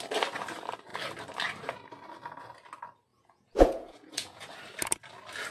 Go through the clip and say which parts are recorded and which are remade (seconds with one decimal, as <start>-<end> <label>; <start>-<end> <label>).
0.0-3.1 recorded; 3.1-4.5 remade; 4.5-5.5 recorded

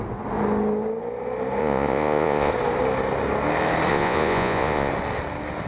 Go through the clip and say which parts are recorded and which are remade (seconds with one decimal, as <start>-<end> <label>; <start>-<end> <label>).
0.0-1.6 recorded; 1.6-2.5 remade; 2.5-3.9 recorded; 3.9-4.9 remade; 4.9-5.7 recorded

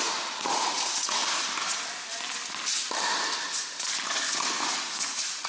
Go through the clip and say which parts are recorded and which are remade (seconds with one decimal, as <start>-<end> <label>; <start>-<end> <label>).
0.0-1.2 remade; 1.2-4.5 recorded; 4.5-5.5 remade

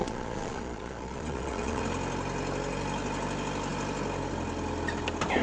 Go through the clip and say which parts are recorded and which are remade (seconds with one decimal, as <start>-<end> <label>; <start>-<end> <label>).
0.0-1.8 remade; 1.8-5.4 recorded